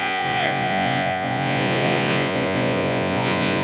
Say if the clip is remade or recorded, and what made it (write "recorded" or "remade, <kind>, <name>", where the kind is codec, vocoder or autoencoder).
remade, vocoder, Vocos